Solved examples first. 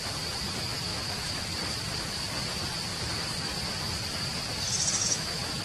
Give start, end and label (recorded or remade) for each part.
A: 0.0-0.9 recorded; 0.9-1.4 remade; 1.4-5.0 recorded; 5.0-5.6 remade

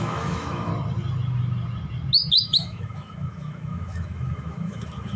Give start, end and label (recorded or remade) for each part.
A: 0.0-0.7 remade; 0.7-2.3 recorded; 2.3-5.2 remade

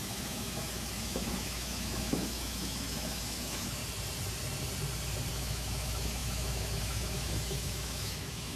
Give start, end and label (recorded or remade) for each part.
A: 0.0-3.8 remade; 3.8-5.3 recorded; 5.3-8.6 remade

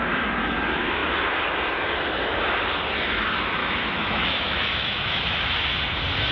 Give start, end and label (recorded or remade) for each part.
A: 0.0-3.6 recorded; 3.6-5.5 remade; 5.5-6.3 recorded

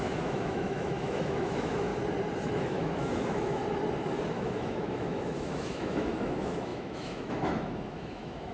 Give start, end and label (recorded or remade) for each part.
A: 0.0-1.9 remade; 1.9-2.5 recorded; 2.5-3.6 remade; 3.6-4.3 recorded; 4.3-8.5 remade

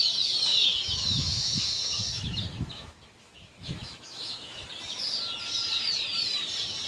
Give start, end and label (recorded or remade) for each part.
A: 0.0-0.5 recorded; 0.5-4.6 remade; 4.6-6.9 recorded